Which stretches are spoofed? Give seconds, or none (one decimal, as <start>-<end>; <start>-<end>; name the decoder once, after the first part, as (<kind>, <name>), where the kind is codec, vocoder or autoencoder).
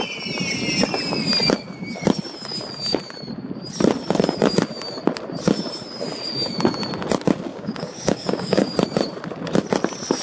7.5-8.7 (codec, DAC)